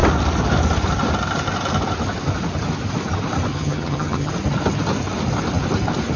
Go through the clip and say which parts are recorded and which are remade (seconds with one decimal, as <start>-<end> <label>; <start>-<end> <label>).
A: 0.0-3.5 recorded; 3.5-4.3 remade; 4.3-6.2 recorded